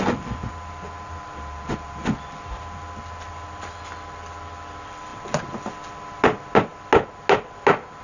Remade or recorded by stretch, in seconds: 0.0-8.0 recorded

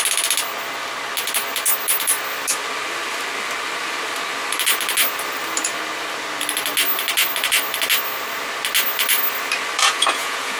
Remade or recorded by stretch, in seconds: 0.0-9.8 recorded; 9.8-10.6 remade

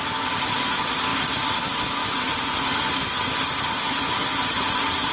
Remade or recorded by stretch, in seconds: 0.0-5.1 recorded

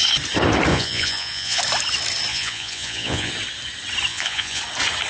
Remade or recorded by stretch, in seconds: 0.0-0.7 recorded; 0.7-1.6 remade; 1.6-2.3 recorded; 2.3-3.3 remade; 3.3-4.1 recorded; 4.1-4.6 remade; 4.6-5.1 recorded

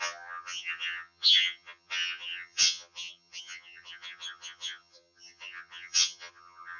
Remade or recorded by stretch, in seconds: 0.0-6.8 remade

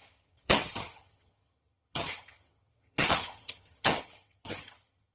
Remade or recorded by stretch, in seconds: 0.0-5.1 remade